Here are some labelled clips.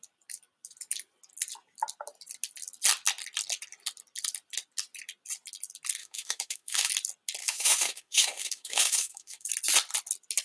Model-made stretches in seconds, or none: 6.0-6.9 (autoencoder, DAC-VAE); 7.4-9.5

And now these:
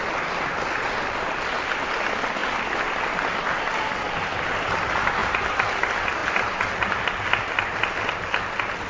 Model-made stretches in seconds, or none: none

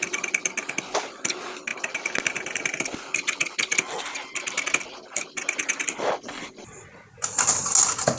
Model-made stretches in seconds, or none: none

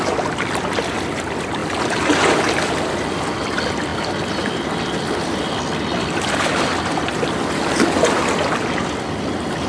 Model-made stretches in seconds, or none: none

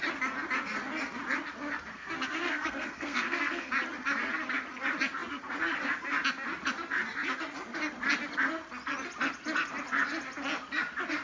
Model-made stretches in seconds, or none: 1.9-3.7 (codec, SNAC)